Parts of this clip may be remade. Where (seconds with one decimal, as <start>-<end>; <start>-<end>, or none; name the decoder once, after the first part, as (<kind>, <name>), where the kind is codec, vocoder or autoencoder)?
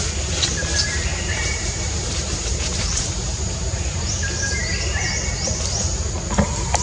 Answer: 1.1-5.1 (vocoder, BigVGAN v2)